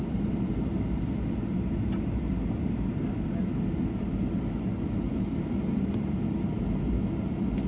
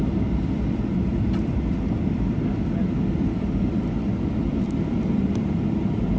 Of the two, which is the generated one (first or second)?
second